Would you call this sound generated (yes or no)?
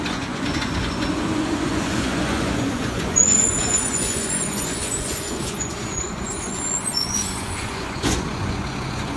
yes